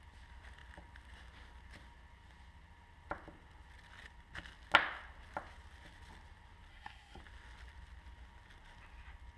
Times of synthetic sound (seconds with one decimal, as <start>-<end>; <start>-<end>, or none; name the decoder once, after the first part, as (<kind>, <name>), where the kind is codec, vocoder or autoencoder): 6.7-7.2 (codec, SNAC)